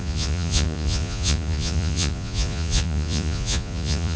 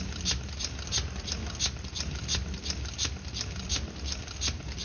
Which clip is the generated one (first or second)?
first